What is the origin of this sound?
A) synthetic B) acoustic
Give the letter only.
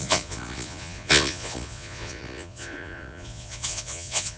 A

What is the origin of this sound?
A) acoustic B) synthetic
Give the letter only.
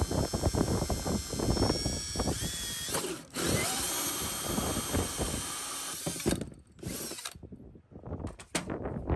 A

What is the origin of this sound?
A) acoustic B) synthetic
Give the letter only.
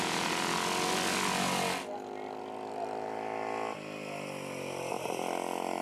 A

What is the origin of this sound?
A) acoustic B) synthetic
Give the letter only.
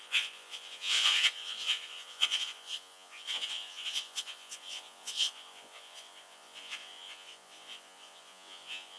B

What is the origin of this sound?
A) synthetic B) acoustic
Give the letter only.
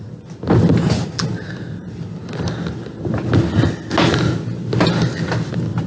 B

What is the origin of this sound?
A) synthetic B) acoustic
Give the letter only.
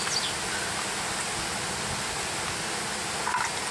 B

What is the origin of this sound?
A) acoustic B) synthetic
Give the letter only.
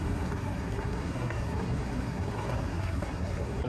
B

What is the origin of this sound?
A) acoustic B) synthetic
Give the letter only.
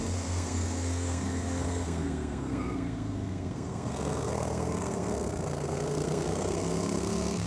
B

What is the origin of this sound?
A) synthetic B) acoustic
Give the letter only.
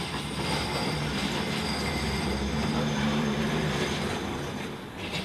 B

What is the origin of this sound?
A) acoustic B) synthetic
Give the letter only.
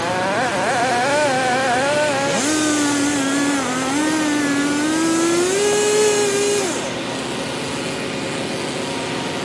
A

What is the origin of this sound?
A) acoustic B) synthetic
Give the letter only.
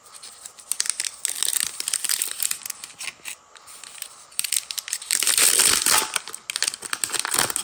A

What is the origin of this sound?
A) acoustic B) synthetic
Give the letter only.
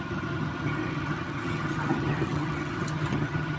B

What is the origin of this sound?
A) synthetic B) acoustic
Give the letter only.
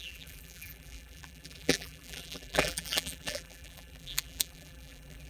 A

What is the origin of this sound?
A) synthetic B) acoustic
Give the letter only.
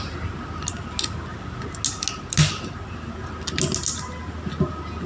B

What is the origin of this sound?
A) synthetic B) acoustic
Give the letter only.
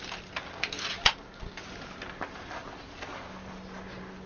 B